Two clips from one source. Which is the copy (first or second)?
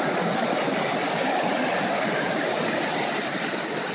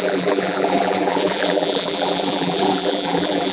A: second